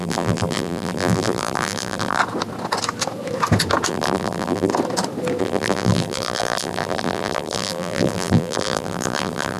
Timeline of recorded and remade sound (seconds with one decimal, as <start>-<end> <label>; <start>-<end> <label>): 0.0-2.2 remade; 2.2-3.9 recorded; 3.9-4.7 remade; 4.7-5.4 recorded; 5.4-9.6 remade

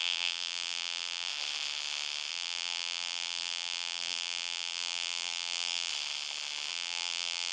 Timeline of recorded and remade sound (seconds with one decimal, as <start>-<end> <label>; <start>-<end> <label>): 0.0-1.3 remade; 1.3-2.3 recorded; 2.3-5.9 remade; 5.9-6.7 recorded; 6.7-7.5 remade